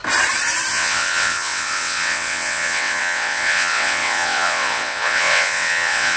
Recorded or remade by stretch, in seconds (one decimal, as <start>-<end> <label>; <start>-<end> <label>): 0.0-0.7 recorded; 0.7-6.2 remade